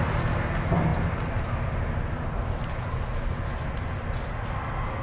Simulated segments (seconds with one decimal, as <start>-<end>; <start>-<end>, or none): none